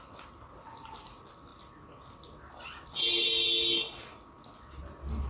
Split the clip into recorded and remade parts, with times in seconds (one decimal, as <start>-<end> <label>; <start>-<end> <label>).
0.0-5.3 recorded